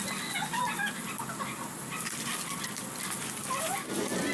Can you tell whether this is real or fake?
real